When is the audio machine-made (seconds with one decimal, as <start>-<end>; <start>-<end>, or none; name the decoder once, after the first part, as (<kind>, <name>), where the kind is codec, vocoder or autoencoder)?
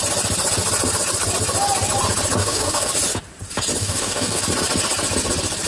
2.4-2.9 (codec, DAC); 3.8-4.4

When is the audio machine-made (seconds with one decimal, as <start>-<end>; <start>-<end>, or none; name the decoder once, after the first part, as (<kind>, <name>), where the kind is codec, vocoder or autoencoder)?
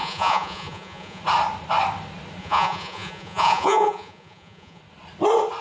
0.0-1.2 (vocoder, Vocos); 2.4-4.8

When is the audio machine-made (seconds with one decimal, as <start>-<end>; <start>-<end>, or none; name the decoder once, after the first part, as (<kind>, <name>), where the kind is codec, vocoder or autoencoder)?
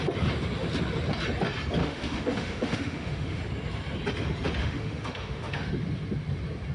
1.8-3.4 (autoencoder, DAC-VAE); 4.6-5.7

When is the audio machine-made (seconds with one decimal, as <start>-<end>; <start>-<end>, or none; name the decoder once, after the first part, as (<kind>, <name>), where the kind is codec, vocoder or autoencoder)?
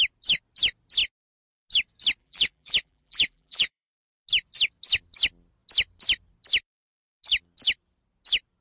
2.2-3.9 (vocoder, BigVGAN v2)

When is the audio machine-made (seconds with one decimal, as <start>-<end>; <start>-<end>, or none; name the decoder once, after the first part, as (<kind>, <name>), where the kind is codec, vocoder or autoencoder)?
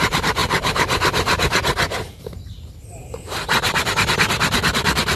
0.0-5.2 (vocoder, BigVGAN v2)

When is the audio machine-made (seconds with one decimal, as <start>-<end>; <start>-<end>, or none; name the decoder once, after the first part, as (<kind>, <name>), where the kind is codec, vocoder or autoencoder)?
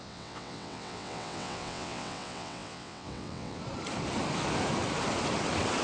0.0-3.6 (vocoder, WaveNeXt)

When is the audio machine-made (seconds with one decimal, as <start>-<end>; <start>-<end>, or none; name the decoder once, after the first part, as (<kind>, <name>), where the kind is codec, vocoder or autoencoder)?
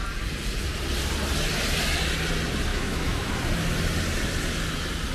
2.7-3.3 (autoencoder, DAC-VAE)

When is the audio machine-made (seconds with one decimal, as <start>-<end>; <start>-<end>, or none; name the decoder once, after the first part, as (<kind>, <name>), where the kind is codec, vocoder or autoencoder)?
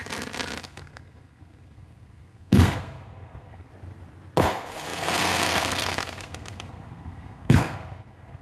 0.6-3.7 (codec, SNAC); 4.4-8.4